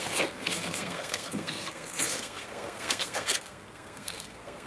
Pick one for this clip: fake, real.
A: fake